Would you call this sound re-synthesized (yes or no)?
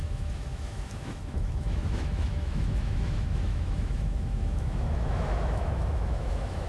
yes